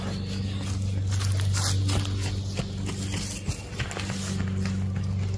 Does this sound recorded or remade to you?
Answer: recorded